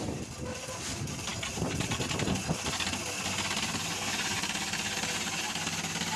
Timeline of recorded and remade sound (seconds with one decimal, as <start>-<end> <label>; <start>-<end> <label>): 0.0-6.2 recorded